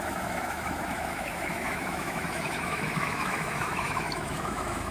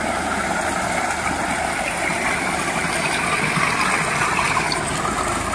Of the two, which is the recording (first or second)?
second